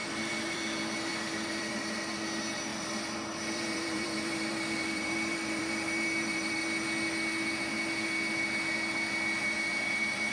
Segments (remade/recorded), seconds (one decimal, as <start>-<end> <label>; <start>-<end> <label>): 0.0-0.6 remade; 0.6-1.1 recorded; 1.1-1.6 remade; 1.6-2.7 recorded; 2.7-6.6 remade; 6.6-10.3 recorded